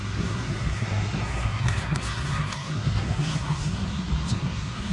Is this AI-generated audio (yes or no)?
yes